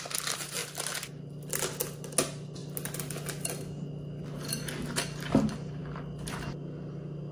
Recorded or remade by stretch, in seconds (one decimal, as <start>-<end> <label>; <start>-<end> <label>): 0.0-7.3 recorded

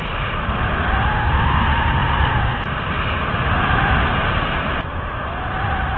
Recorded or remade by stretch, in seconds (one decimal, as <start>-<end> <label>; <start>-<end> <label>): 0.0-6.0 recorded

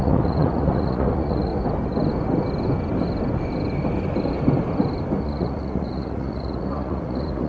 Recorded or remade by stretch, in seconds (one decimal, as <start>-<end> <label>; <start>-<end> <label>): 0.0-1.5 remade; 1.5-5.2 recorded; 5.2-7.5 remade

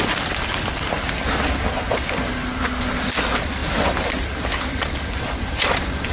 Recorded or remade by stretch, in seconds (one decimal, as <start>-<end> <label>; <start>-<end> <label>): 0.0-6.1 recorded

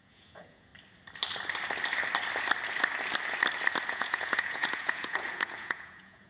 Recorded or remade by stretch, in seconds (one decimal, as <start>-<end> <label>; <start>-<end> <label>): 0.0-0.7 remade; 0.7-3.9 recorded; 3.9-6.3 remade

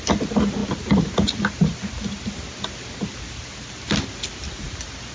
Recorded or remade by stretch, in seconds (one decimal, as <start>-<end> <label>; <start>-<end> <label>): 0.0-5.1 recorded